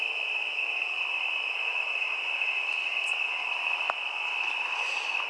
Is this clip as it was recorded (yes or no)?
yes